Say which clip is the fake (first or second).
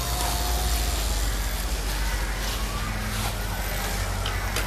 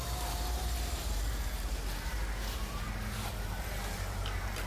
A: second